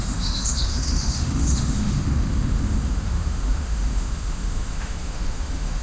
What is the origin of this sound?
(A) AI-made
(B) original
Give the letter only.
A